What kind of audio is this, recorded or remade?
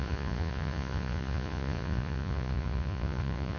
remade